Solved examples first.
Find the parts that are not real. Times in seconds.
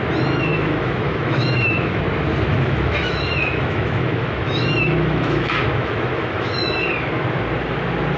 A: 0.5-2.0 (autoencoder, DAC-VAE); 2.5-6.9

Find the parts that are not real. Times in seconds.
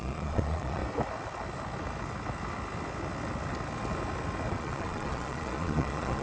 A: 0.0-0.8 (vocoder, Vocos); 4.5-6.2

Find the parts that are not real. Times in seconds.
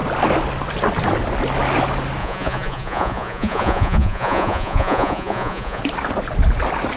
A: 2.2-5.8 (vocoder, Vocos)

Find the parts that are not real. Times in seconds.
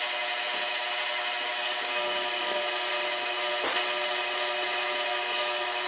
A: 1.5-2.9 (codec, DAC); 5.1-5.9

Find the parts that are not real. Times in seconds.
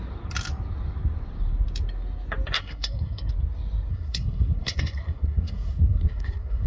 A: 2.6-3.3 (codec, SNAC); 3.9-6.7